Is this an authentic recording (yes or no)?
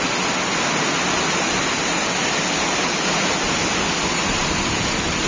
yes